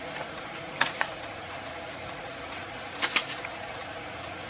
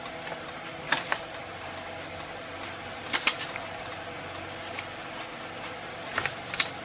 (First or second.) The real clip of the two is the second